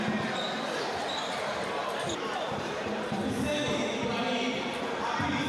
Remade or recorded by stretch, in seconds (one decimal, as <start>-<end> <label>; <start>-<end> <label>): 0.0-5.5 remade